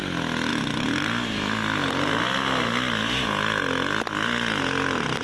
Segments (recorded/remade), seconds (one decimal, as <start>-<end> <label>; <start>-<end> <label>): 0.0-5.2 recorded